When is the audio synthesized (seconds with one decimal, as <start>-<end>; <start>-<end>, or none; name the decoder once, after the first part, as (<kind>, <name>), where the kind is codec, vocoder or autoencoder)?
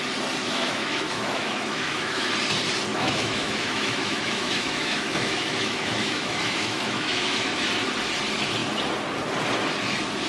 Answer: 0.4-2.3 (autoencoder, DAC-VAE); 2.9-7.7